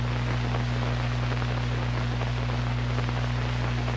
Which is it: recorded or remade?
recorded